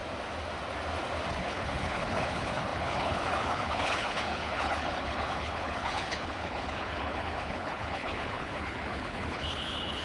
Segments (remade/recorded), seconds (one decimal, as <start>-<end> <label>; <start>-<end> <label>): 0.0-1.3 recorded; 1.3-10.0 remade